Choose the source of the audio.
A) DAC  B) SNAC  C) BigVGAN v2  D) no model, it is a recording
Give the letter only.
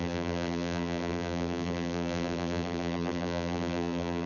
C